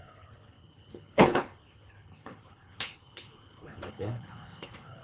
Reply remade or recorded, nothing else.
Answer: remade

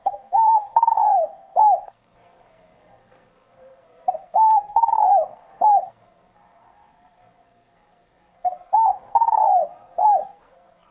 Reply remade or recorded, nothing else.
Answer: remade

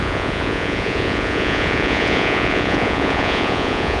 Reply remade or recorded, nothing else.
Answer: remade